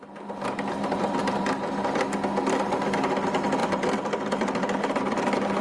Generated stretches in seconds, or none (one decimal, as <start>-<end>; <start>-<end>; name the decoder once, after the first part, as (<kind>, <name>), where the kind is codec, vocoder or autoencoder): 3.6-4.8 (vocoder, BigVGAN v2)